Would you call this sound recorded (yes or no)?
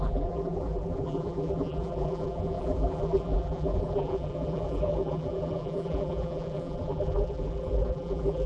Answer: no